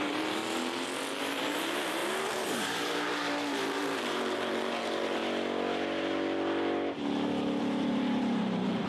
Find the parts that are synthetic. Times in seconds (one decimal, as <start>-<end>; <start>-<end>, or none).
0.0-0.4; 1.2-2.0; 2.5-5.2; 7.6-8.9